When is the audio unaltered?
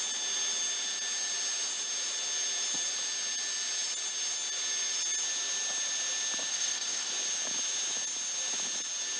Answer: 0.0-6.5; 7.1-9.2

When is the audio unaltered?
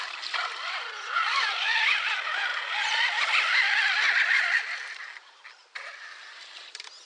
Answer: 0.0-7.1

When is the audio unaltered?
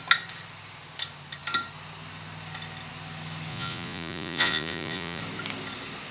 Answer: 0.0-3.5; 5.2-6.1